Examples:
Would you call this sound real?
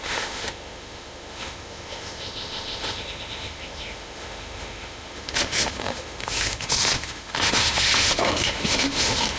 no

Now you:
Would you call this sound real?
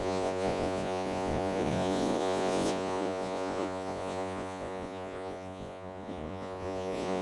no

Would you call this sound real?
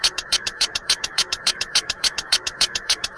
no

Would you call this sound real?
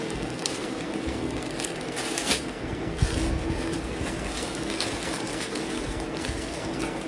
no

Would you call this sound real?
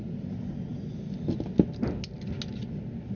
yes